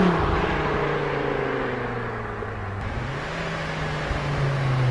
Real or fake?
real